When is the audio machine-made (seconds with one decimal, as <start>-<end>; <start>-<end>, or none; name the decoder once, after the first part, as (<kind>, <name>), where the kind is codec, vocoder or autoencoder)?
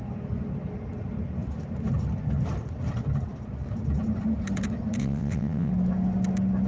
5.0-5.7 (vocoder, WaveNeXt)